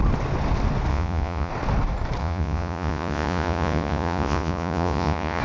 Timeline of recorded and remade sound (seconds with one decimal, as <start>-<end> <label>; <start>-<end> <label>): 0.0-0.9 recorded; 0.9-1.5 remade; 1.5-2.2 recorded; 2.2-5.4 remade